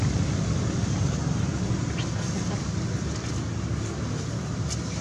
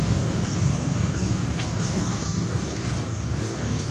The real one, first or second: first